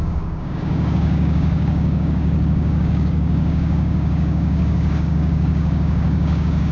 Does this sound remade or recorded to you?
remade